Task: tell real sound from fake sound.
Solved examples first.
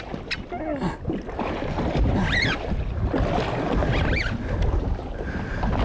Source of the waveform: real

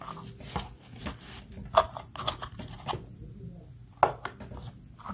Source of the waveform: real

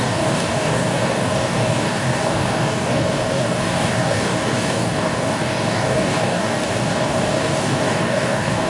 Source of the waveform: fake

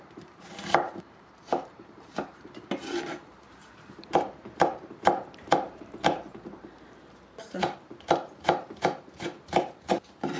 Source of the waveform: fake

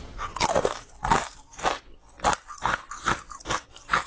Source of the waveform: real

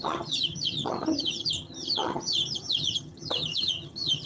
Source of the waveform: fake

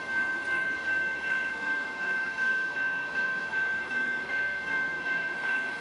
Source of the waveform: fake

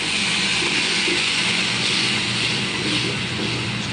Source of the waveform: fake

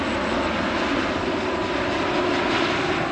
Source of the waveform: real